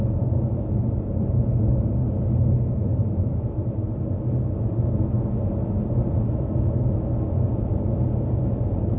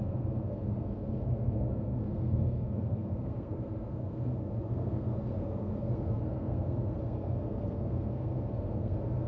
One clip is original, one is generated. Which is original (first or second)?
first